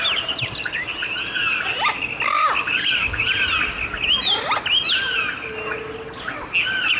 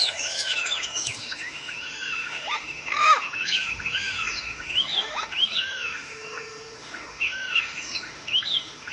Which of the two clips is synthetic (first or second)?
second